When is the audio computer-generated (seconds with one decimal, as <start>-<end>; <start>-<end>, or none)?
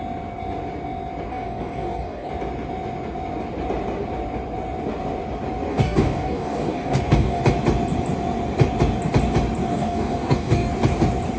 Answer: 1.3-2.3; 5.7-7.4; 9.7-10.7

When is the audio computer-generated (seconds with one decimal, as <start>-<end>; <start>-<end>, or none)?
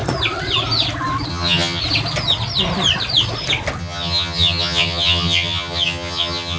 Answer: 1.3-1.8; 3.8-6.6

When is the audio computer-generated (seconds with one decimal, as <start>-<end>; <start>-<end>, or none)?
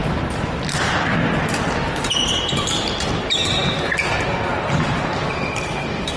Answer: 4.5-6.2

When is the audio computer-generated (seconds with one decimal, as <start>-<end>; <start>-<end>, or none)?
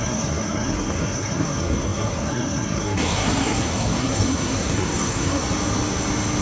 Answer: 0.0-5.4